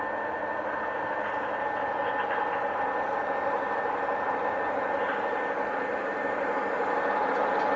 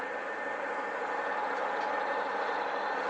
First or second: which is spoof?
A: second